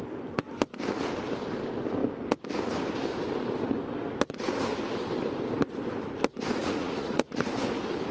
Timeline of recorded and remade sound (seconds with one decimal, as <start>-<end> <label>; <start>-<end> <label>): 0.0-6.6 recorded; 6.6-7.5 remade; 7.5-8.1 recorded